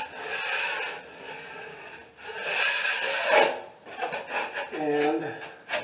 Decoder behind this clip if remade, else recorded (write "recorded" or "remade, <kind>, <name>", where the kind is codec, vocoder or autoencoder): recorded